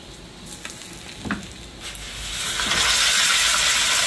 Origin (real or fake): real